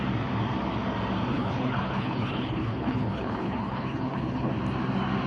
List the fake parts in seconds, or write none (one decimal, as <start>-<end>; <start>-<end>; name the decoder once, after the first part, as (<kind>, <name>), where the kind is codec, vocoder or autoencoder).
1.3-4.5 (codec, HILCodec)